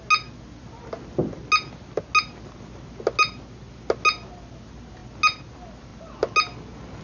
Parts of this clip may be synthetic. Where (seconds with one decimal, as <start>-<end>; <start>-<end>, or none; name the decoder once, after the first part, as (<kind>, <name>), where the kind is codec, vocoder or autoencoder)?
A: none